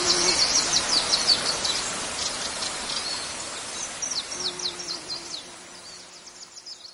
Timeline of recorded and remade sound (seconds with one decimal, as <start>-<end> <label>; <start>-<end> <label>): 0.0-6.9 recorded